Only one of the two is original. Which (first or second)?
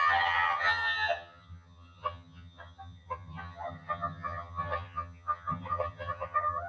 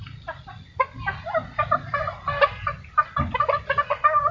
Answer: second